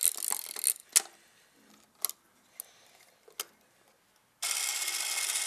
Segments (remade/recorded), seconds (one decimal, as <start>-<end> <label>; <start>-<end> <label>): 0.0-5.5 recorded